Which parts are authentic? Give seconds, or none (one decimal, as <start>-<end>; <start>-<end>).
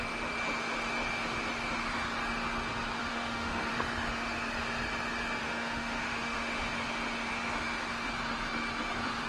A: 0.0-3.0; 3.7-5.4; 6.6-9.3